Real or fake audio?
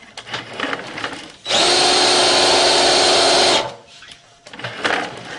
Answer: real